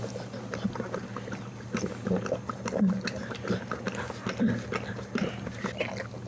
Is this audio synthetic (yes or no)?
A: no